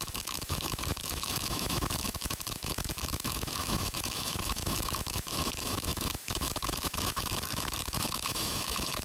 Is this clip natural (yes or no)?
no